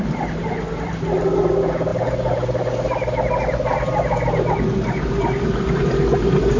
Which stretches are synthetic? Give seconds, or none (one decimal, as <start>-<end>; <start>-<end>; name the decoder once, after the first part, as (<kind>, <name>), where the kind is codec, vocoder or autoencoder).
none